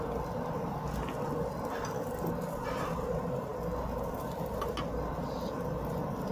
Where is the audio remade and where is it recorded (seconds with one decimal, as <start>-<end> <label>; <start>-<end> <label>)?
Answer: 0.0-6.3 recorded

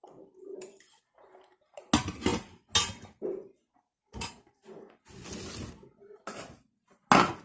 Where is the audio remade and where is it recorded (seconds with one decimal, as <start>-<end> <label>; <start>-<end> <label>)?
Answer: 0.0-7.4 recorded

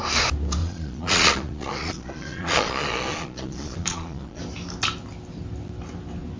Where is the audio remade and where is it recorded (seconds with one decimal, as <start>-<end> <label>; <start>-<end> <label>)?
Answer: 0.0-0.6 recorded; 0.6-4.4 remade; 4.4-6.4 recorded

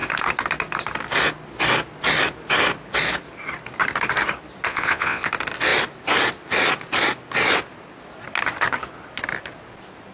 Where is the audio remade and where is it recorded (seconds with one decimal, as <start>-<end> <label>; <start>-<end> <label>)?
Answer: 0.0-4.7 recorded; 4.7-5.3 remade; 5.3-10.1 recorded

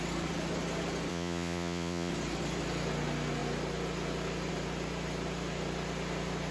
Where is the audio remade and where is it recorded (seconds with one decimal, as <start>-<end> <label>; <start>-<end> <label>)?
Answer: 0.0-1.1 recorded; 1.1-2.1 remade; 2.1-6.5 recorded

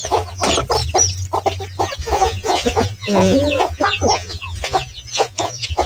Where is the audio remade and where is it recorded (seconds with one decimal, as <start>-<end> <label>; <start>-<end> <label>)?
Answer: 0.0-0.4 remade; 0.4-1.8 recorded; 1.8-5.9 remade

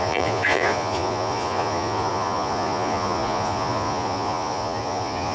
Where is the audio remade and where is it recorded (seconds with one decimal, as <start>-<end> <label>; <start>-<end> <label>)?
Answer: 0.0-5.3 remade